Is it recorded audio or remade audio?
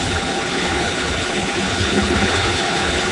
remade